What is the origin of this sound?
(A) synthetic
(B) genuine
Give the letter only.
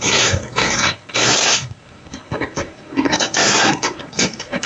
A